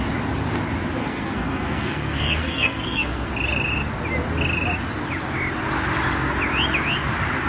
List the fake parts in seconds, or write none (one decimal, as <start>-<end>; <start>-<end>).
1.0-3.3